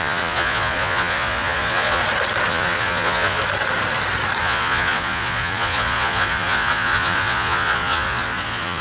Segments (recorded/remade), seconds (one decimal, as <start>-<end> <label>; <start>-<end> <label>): 0.0-2.0 remade; 2.0-2.5 recorded; 2.5-3.4 remade; 3.4-4.4 recorded; 4.4-8.8 remade